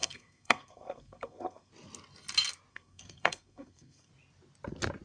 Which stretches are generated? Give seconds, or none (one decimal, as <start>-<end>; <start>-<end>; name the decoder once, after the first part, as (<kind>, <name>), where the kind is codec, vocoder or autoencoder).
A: 0.0-1.7 (codec, SNAC); 2.7-4.1